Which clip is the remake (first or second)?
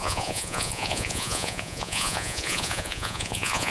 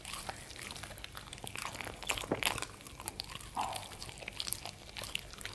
first